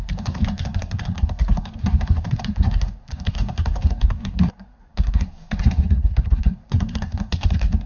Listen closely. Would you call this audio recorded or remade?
remade